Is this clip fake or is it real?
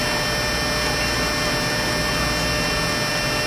real